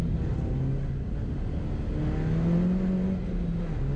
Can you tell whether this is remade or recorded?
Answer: recorded